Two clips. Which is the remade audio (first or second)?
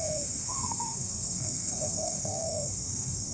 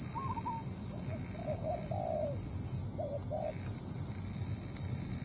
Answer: first